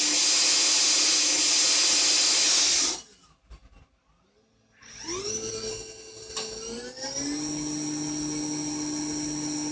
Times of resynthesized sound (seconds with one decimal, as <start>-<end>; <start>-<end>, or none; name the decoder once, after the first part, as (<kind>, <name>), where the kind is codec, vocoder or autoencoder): none